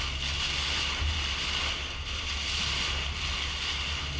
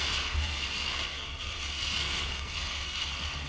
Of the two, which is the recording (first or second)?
first